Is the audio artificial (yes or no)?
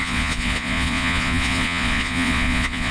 yes